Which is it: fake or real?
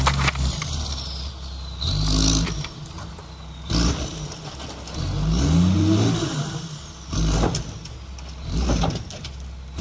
real